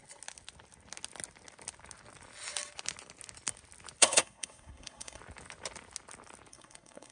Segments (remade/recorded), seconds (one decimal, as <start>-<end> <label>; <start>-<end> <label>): 0.0-4.0 recorded; 4.0-5.2 remade; 5.2-6.5 recorded; 6.5-7.1 remade